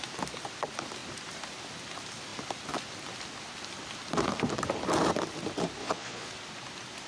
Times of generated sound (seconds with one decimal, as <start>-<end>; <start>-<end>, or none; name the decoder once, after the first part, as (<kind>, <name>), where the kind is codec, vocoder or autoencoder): 5.8-6.3 (vocoder, Vocos)